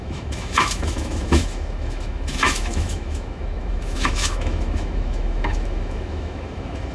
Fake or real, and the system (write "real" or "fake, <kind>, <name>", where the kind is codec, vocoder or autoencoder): fake, autoencoder, DAC-VAE